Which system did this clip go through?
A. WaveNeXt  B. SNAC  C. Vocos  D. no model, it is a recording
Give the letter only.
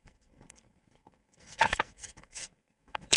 B